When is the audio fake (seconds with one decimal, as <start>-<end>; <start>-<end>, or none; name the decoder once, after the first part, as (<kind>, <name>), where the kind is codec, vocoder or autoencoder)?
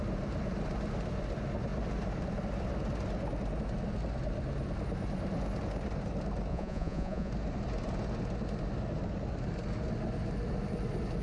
6.5-7.3 (vocoder, Vocos)